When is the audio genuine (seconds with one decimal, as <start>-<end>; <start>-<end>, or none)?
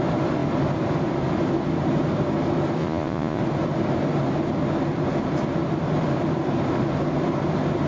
0.0-2.8; 3.4-7.9